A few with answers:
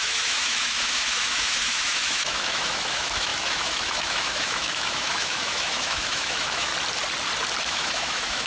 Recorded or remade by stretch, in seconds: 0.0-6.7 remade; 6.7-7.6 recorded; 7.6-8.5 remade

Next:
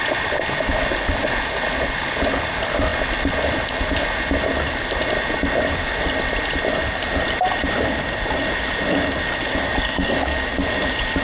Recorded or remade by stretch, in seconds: 0.0-9.5 recorded; 9.5-10.5 remade; 10.5-11.2 recorded

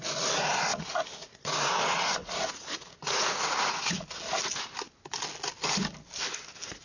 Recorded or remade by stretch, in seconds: 0.0-0.7 recorded; 0.7-4.0 remade; 4.0-6.8 recorded